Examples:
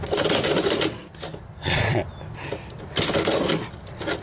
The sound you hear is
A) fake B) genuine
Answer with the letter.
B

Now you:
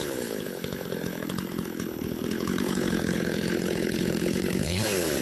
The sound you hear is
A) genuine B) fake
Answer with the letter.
B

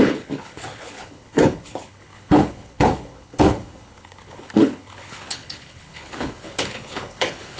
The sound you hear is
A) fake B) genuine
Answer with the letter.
A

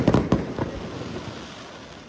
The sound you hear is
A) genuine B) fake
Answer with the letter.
A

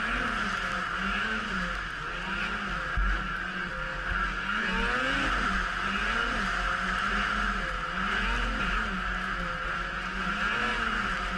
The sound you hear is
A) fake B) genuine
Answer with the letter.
B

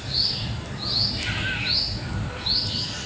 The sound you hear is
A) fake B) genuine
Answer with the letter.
B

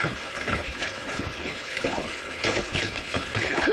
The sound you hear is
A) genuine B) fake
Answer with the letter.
B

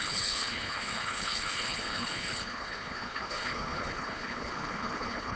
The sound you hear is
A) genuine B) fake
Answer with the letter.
B